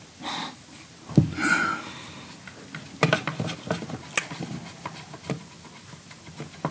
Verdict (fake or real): real